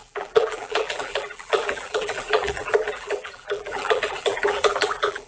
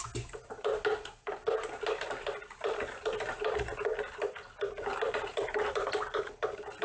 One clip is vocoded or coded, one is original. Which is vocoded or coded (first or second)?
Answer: first